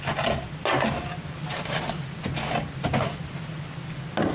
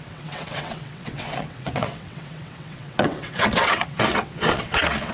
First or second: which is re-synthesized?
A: second